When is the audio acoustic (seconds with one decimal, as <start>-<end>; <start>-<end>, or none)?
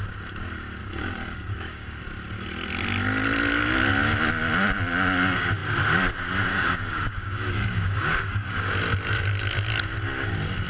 0.0-0.8; 2.0-6.5; 8.7-10.7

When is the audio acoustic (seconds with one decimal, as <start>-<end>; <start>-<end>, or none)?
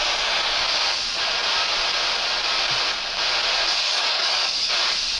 0.0-3.8; 4.7-5.2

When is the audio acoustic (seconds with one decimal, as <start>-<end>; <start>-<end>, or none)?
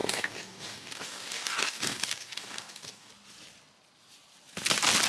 3.1-5.1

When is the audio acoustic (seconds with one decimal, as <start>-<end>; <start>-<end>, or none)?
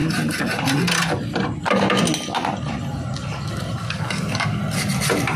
0.0-3.8; 4.6-5.4